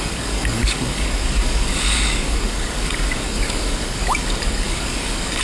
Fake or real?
fake